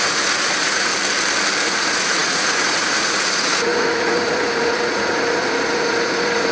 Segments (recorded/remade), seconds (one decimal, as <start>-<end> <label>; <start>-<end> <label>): 0.0-0.9 remade; 0.9-1.6 recorded; 1.6-6.5 remade